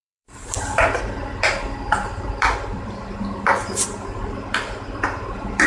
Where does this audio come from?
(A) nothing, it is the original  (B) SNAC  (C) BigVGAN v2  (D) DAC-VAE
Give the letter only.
C